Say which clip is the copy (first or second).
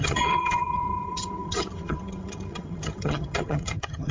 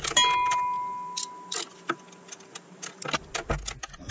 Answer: first